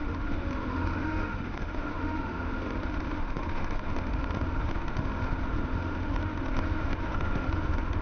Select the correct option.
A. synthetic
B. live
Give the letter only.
A